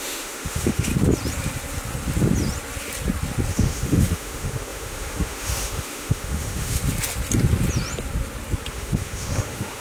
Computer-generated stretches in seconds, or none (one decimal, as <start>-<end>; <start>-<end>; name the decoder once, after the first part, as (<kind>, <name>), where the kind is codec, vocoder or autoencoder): 0.0-0.9 (autoencoder, DAC-VAE); 3.5-6.8; 8.7-9.8